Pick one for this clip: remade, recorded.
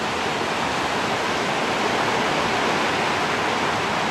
recorded